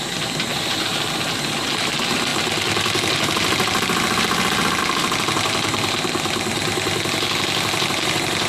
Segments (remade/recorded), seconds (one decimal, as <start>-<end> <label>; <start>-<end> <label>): 0.0-8.5 recorded